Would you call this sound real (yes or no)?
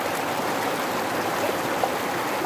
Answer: yes